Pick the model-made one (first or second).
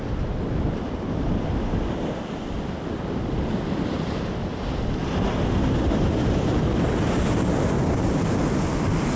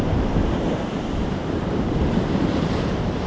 second